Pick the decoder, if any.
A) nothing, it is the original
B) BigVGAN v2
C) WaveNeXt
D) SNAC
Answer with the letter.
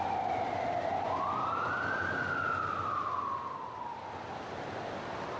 A